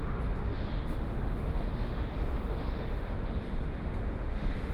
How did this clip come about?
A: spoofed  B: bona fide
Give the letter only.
A